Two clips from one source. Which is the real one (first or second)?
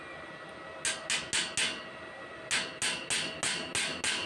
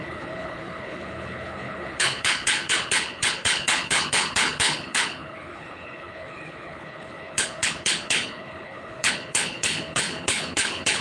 first